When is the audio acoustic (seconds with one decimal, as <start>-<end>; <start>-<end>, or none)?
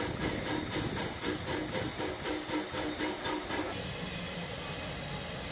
0.0-5.5